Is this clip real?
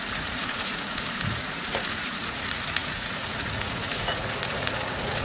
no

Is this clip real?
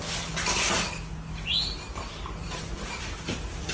yes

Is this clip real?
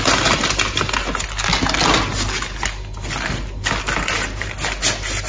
yes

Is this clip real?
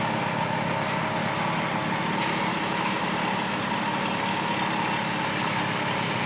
yes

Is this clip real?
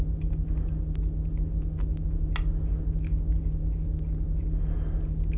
yes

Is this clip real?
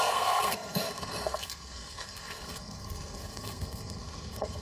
no